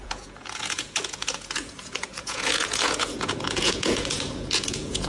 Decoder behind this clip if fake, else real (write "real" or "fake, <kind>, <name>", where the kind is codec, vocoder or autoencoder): fake, vocoder, Vocos